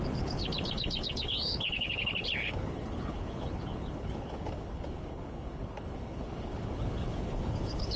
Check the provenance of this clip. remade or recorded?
remade